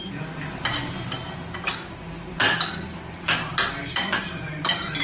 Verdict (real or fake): real